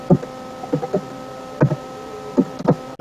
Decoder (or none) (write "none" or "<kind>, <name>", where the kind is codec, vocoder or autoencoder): none